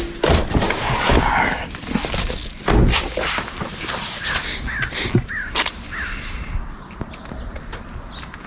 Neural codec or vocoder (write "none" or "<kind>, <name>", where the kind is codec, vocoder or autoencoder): none